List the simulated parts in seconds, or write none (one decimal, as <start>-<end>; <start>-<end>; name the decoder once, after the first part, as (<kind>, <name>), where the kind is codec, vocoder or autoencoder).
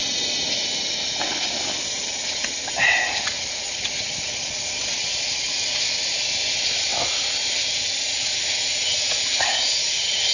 none